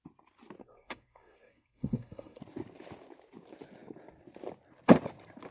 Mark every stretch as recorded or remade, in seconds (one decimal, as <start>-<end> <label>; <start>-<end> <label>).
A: 0.0-0.6 recorded; 0.6-2.4 remade; 2.4-5.5 recorded